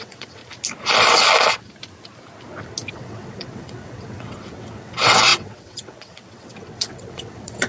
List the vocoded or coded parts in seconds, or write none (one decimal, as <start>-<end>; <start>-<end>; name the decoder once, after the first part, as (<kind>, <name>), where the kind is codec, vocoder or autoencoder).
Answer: 0.0-0.4 (vocoder, WaveNeXt); 2.9-7.7